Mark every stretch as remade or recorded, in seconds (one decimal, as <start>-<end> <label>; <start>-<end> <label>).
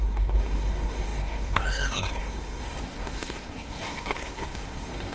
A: 0.0-5.1 remade